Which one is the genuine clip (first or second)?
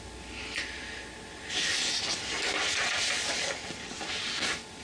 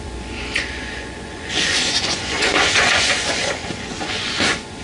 first